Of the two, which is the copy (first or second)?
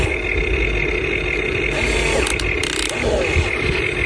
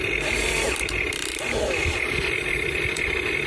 second